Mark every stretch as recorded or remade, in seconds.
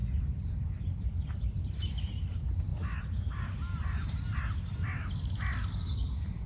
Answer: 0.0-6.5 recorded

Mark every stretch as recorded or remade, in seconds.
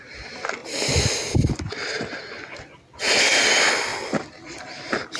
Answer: 0.0-5.2 recorded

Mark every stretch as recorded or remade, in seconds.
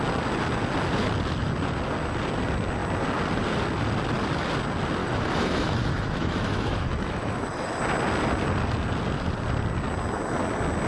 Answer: 0.0-5.0 recorded; 5.0-7.8 remade; 7.8-10.9 recorded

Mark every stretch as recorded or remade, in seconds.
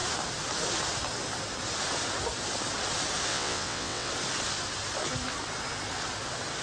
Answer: 0.0-3.3 recorded; 3.3-4.1 remade; 4.1-6.6 recorded